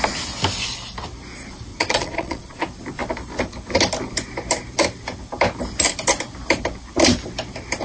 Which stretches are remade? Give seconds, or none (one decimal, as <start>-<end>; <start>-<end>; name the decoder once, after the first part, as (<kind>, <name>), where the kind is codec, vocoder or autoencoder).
1.7-2.6 (vocoder, Vocos)